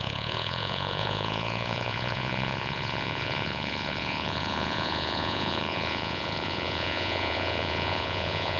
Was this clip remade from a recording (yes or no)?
yes